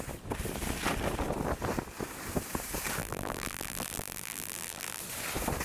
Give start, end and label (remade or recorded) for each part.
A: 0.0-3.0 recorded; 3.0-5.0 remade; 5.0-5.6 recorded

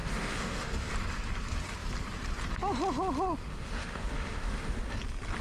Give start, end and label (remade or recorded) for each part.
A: 0.0-0.9 remade; 0.9-3.5 recorded; 3.5-4.9 remade; 4.9-5.4 recorded

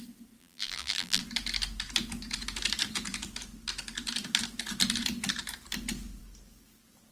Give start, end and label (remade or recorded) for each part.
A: 0.0-0.4 recorded; 0.4-1.2 remade; 1.2-7.1 recorded

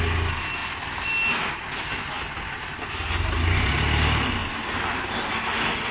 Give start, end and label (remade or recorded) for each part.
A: 0.0-5.9 recorded

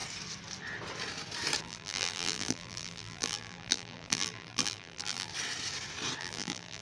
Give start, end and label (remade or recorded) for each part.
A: 0.0-1.6 recorded; 1.6-5.3 remade; 5.3-6.2 recorded; 6.2-6.8 remade

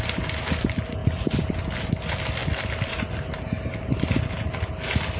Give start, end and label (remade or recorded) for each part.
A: 0.0-1.0 recorded; 1.0-1.9 remade; 1.9-2.4 recorded; 2.4-3.1 remade; 3.1-5.2 recorded

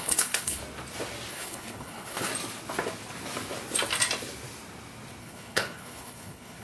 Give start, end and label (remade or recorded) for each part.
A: 0.0-0.6 remade; 0.6-1.3 recorded; 1.3-2.3 remade; 2.3-5.2 recorded; 5.2-6.6 remade